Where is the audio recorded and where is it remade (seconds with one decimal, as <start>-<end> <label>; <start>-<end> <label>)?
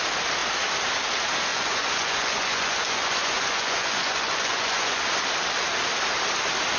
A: 0.0-1.5 recorded; 1.5-5.0 remade; 5.0-6.8 recorded